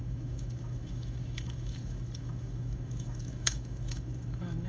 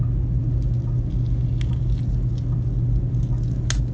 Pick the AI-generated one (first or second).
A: first